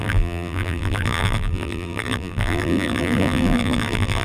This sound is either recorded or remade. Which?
remade